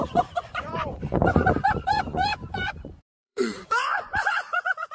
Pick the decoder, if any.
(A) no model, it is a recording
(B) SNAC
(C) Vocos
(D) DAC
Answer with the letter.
C